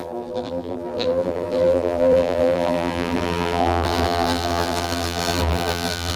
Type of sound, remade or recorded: remade